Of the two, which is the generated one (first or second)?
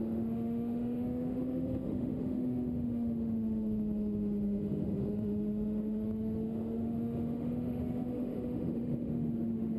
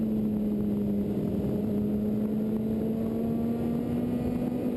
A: first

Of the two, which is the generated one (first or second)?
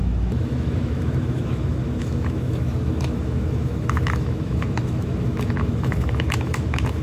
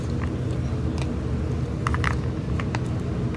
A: first